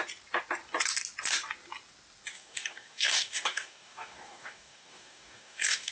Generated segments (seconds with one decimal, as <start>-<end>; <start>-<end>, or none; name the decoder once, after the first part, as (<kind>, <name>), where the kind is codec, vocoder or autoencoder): 2.3-5.9 (codec, DAC)